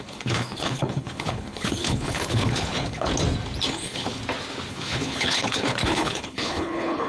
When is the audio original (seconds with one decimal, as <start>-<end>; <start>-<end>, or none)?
3.1-3.7; 4.2-4.7